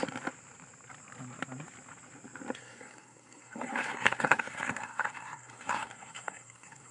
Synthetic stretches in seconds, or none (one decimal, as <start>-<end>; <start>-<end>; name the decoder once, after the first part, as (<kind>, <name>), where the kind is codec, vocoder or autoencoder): 2.6-6.9 (codec, SNAC)